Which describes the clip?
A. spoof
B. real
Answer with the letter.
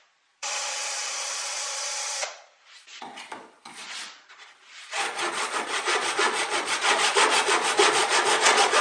A